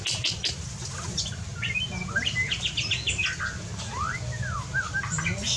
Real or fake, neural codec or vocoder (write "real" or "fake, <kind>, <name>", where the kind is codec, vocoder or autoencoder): real